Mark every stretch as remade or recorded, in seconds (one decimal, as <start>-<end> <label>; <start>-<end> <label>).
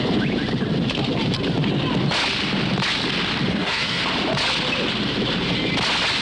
0.0-3.5 recorded; 3.5-4.0 remade; 4.0-6.2 recorded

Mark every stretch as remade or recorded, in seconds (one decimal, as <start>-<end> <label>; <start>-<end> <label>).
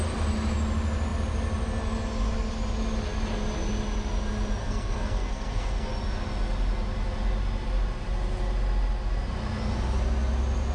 0.0-4.6 recorded; 4.6-5.9 remade; 5.9-10.7 recorded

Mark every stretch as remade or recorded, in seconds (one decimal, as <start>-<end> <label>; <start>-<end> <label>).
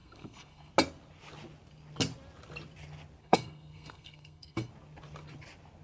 0.0-0.7 remade; 0.7-3.2 recorded; 3.2-4.7 remade; 4.7-5.8 recorded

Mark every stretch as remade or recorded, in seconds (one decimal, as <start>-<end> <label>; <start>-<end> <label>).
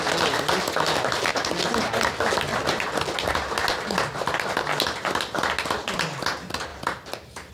0.0-7.5 recorded